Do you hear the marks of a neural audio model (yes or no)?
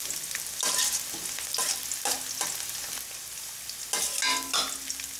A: no